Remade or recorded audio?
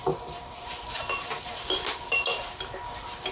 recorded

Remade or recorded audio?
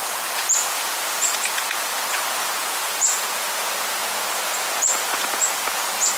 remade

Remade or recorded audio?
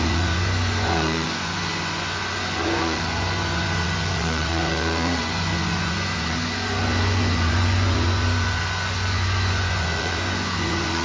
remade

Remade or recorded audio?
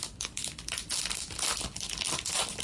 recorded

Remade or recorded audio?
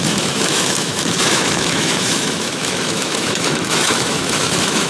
remade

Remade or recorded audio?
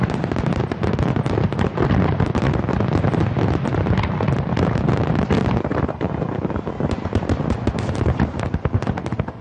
recorded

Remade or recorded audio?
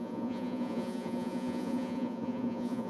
remade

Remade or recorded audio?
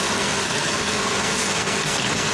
remade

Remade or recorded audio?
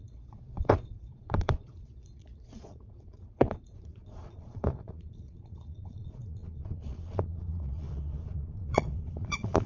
remade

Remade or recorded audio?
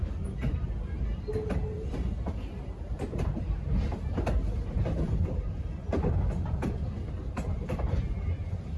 remade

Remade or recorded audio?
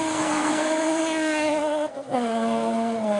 remade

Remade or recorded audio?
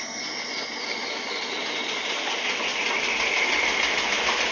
recorded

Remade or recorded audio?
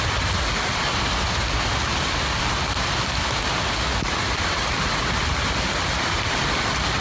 recorded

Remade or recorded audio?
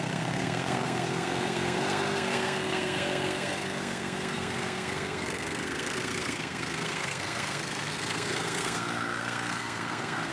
remade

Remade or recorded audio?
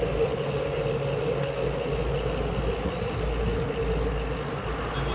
recorded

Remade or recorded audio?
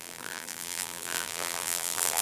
remade